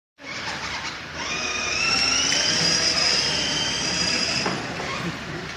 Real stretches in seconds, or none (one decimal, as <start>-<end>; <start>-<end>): 3.4-5.6